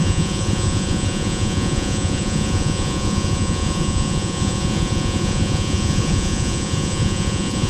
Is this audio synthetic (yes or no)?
yes